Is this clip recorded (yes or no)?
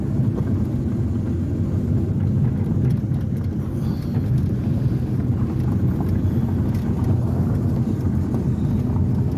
yes